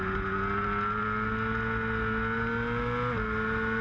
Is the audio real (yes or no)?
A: yes